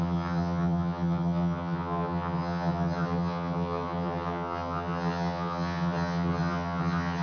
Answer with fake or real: fake